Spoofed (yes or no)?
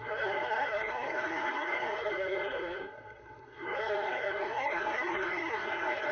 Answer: yes